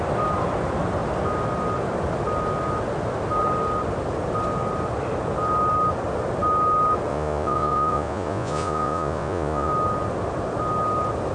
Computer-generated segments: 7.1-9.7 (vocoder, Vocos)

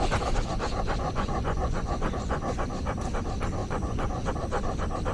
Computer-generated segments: 1.0-2.8 (vocoder, Vocos); 3.6-4.3

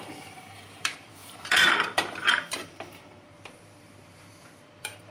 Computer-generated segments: 0.0-5.1 (vocoder, BigVGAN v2)